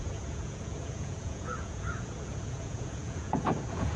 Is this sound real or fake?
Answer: fake